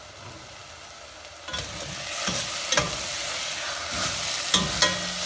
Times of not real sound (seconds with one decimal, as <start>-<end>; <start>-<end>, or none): none